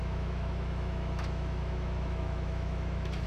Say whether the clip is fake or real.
fake